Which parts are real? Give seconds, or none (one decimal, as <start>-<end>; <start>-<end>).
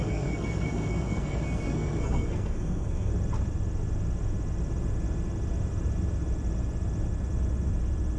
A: 3.1-8.2